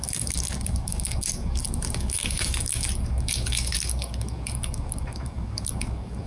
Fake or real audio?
fake